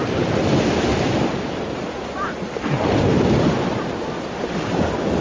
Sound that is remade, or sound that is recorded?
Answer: recorded